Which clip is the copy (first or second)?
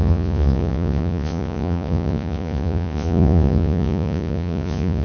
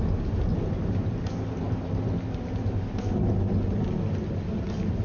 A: first